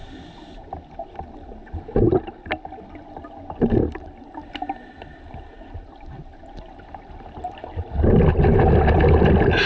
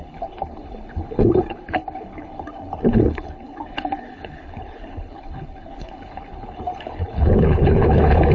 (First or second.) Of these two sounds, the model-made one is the second